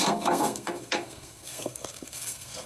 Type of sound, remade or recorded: remade